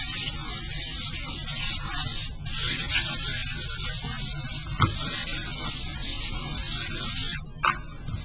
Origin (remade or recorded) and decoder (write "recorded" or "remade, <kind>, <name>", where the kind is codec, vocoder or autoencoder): recorded